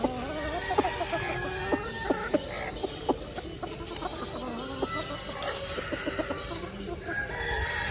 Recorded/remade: recorded